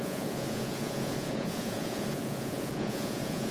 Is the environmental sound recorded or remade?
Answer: remade